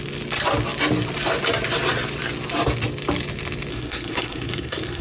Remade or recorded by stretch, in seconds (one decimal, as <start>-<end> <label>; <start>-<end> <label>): 0.0-3.7 recorded; 3.7-5.0 remade